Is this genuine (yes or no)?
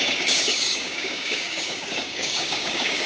no